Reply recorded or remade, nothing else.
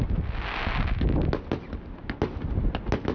recorded